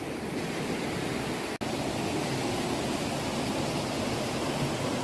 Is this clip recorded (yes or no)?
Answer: yes